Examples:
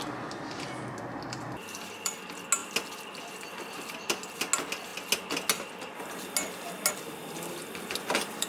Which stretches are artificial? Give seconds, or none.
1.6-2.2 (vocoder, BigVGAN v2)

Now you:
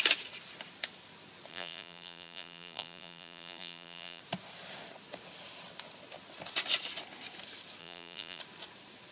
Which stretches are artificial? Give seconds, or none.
1.5-4.2 (vocoder, BigVGAN v2); 7.8-8.4

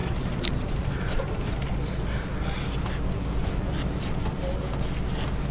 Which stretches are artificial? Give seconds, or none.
0.0-1.5 (vocoder, BigVGAN v2); 3.4-4.4